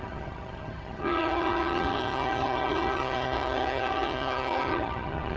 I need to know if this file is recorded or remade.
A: remade